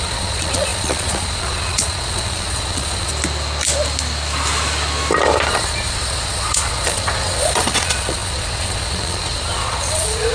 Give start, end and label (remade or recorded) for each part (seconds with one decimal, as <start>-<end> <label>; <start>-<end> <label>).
0.0-3.1 remade; 3.1-5.5 recorded; 5.5-10.3 remade